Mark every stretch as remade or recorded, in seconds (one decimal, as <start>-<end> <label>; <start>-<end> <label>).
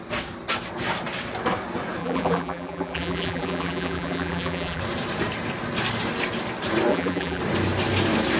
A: 0.0-2.0 recorded; 2.0-4.8 remade; 4.8-6.9 recorded; 6.9-7.4 remade; 7.4-8.4 recorded